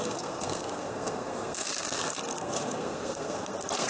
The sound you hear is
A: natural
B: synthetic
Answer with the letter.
B